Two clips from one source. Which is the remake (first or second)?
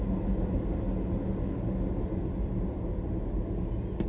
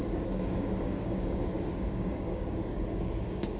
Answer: second